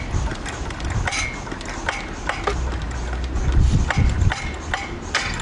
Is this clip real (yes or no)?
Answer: yes